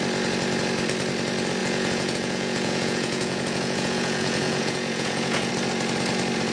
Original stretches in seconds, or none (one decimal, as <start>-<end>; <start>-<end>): 0.0-1.6; 5.5-6.5